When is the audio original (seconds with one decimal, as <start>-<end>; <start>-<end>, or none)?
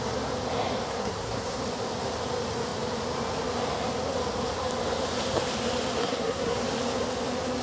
0.0-0.9; 1.6-6.0; 6.6-7.6